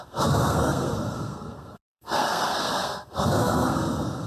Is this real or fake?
fake